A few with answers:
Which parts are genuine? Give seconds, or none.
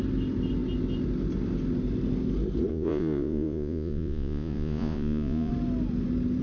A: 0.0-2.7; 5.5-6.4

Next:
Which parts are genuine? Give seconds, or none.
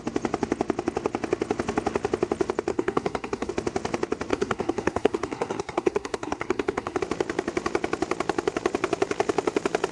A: 0.0-2.7; 3.5-4.3; 7.0-9.9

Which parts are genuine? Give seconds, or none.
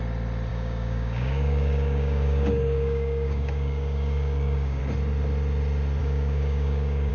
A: 0.0-0.5; 4.8-6.0